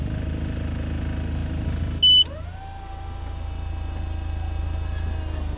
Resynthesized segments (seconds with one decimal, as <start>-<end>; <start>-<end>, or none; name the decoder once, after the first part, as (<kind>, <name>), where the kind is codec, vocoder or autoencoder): none